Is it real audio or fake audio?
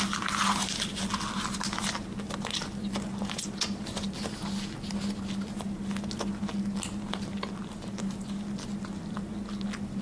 real